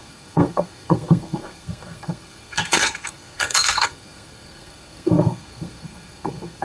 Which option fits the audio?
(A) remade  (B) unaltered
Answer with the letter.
A